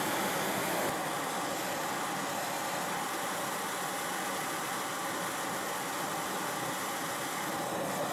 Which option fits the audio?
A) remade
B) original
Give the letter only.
B